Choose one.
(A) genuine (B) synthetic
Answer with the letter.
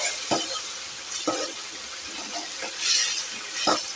A